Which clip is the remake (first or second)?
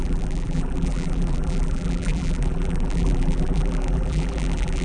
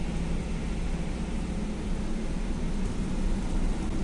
first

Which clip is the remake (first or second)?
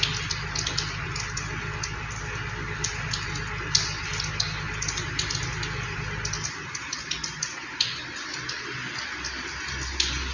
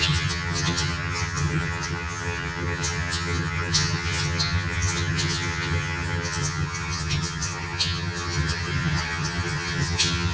second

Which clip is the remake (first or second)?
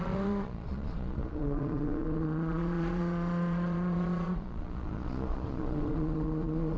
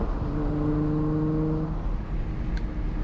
first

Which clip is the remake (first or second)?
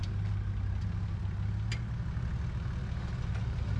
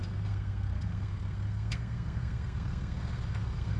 second